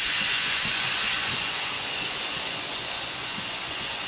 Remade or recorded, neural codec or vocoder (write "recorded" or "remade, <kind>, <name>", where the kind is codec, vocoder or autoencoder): remade, vocoder, Vocos